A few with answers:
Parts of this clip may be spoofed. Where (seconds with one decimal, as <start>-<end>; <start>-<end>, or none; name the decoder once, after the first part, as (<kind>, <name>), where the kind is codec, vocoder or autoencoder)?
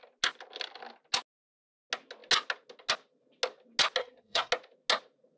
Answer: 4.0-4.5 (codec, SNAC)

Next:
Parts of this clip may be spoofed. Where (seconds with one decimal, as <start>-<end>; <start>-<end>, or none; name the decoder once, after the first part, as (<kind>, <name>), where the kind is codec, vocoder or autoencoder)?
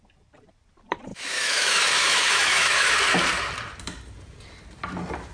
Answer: 1.1-2.9 (autoencoder, DAC-VAE)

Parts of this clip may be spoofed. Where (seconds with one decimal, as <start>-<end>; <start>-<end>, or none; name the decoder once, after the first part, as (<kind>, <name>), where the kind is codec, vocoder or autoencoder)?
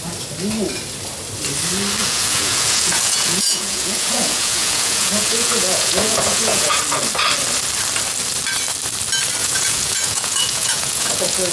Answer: 2.0-6.8 (vocoder, Vocos); 9.4-11.5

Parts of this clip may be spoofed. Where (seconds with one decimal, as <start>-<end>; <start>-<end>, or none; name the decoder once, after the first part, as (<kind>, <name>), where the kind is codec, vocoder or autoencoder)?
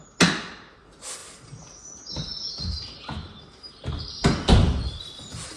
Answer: none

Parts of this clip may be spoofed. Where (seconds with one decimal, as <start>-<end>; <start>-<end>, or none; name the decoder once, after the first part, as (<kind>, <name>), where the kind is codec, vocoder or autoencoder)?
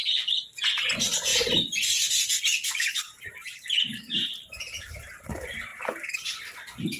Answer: 0.0-0.7 (vocoder, BigVGAN v2)